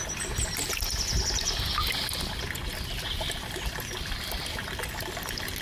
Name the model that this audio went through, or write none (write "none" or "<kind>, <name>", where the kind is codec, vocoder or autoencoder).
none